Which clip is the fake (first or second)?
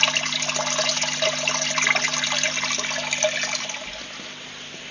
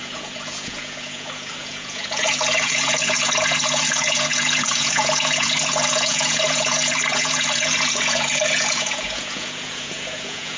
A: second